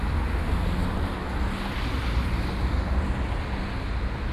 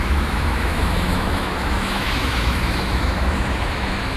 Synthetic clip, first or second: second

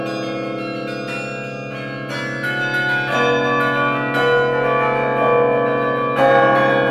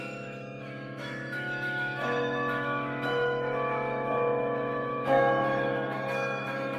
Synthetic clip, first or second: second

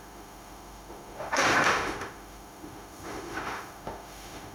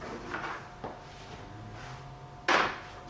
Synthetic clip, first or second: first